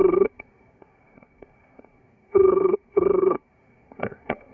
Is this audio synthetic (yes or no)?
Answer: yes